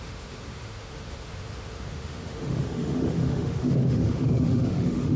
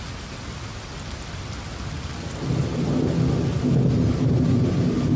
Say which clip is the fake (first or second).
first